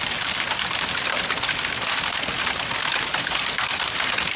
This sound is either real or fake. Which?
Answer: real